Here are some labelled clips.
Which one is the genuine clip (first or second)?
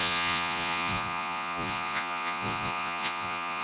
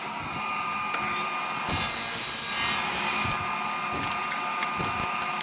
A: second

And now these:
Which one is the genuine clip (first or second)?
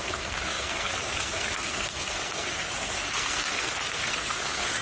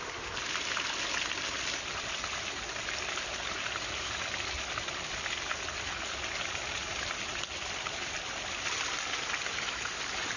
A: second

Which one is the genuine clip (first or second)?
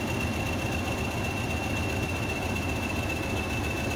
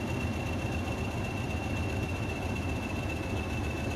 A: first